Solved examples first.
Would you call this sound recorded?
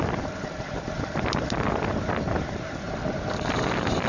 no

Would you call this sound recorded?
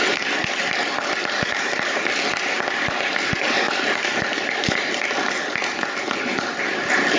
yes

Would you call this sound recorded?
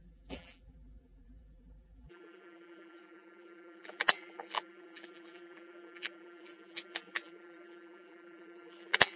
no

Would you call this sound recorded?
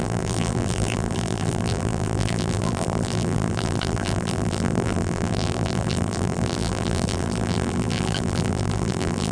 no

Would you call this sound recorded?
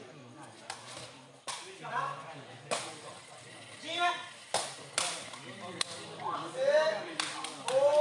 yes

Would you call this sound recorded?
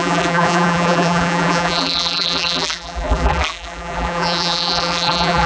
no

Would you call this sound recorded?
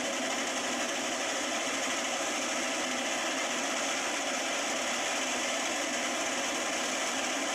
yes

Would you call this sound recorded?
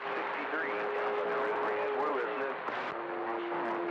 yes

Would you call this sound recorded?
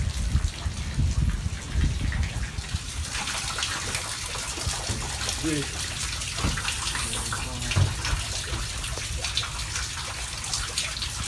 yes